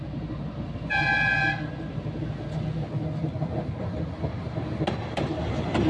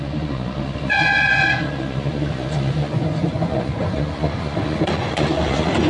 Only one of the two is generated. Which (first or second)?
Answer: second